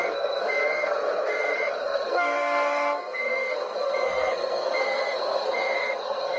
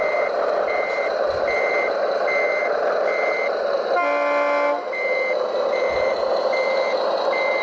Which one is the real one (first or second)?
second